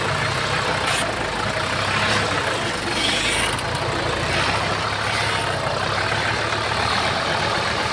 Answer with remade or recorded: recorded